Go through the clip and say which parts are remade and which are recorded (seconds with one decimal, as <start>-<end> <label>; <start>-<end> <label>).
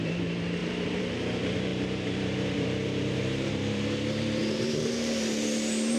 0.0-6.0 remade